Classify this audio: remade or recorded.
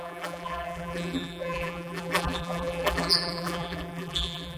remade